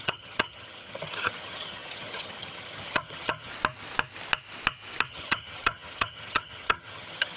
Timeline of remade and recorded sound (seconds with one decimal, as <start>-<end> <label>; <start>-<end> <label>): 0.0-3.5 remade; 3.5-5.1 recorded; 5.1-7.4 remade